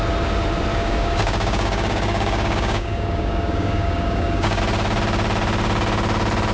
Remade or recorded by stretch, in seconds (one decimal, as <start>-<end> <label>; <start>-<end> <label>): 0.0-0.7 recorded; 0.7-4.6 remade; 4.6-6.5 recorded